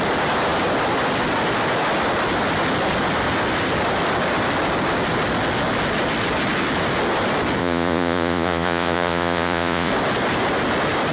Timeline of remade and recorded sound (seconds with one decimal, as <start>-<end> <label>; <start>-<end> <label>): 0.0-7.6 recorded; 7.6-9.9 remade; 9.9-11.1 recorded